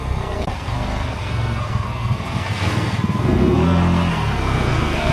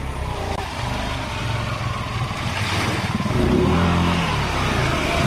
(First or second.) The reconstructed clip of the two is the first